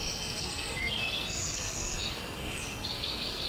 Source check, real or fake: fake